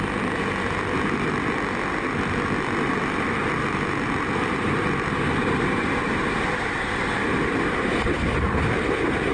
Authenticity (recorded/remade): recorded